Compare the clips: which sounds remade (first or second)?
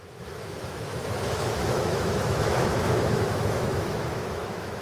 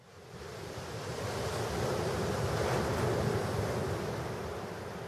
first